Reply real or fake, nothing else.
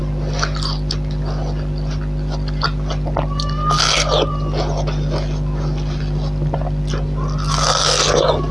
real